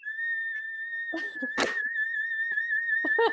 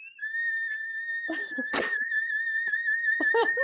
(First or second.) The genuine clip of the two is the first